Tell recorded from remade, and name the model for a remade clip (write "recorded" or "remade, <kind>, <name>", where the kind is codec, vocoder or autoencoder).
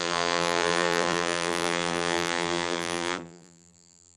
remade, vocoder, BigVGAN v2